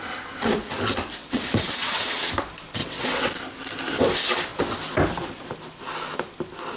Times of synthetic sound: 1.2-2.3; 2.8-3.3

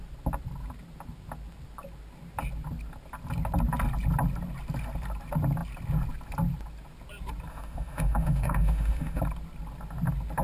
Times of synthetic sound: 7.5-9.2

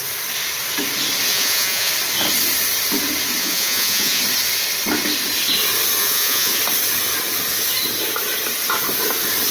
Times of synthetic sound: 1.3-1.9; 3.4-4.2; 6.0-6.6

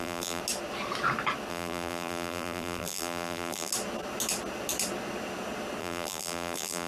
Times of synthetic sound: 0.0-0.4; 1.5-3.7; 5.8-6.9

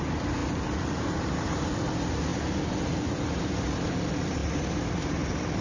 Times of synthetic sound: 0.0-0.4; 1.0-2.3; 4.0-5.6

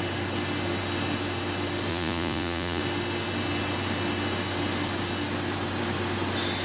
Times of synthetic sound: 1.9-2.8

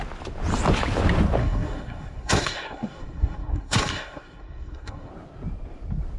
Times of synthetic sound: 1.4-5.1